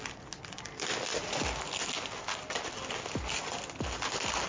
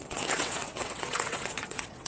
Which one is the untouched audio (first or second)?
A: first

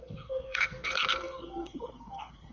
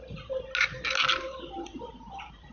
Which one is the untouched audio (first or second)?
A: second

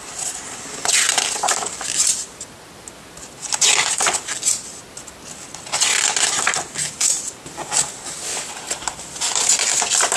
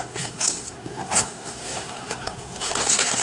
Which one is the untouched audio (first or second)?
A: first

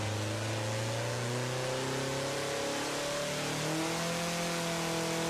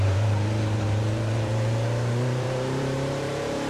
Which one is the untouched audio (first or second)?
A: first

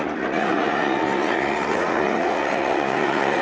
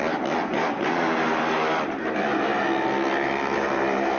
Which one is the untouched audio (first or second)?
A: second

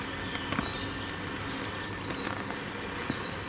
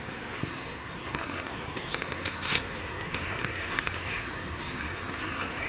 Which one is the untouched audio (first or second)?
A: first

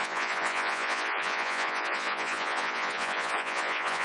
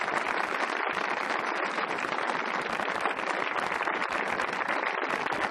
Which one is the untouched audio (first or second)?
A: second